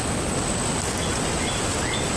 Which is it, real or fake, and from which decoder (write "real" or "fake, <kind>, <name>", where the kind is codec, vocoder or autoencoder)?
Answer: real